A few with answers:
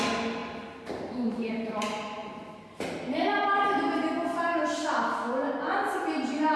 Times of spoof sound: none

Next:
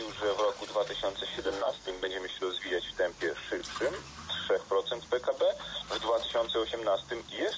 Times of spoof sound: 1.3-2.1 (codec, SNAC)

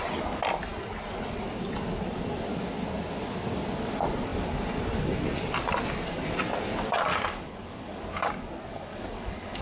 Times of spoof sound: 7.1-8.0 (codec, DAC); 8.7-9.6

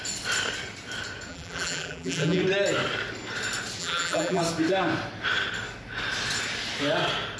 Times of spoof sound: 1.3-2.4 (vocoder, BigVGAN v2); 3.8-4.4

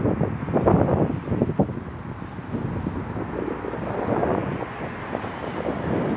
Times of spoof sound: 4.2-5.0 (vocoder, Vocos)

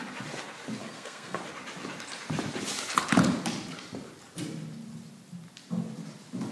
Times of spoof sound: 0.8-1.4 (codec, SNAC)

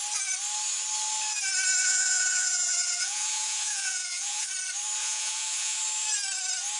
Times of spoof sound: 1.8-4.5 (vocoder, Vocos); 5.0-5.8

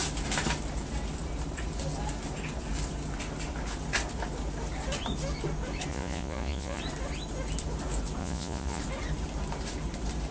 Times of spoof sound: 5.9-6.8 (vocoder, Vocos); 8.2-8.8